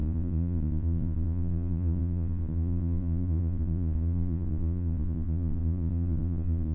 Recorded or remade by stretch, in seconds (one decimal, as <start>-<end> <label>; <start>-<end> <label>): 0.0-6.7 remade